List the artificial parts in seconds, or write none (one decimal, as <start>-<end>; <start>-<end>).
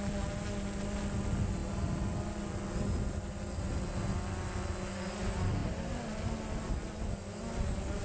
none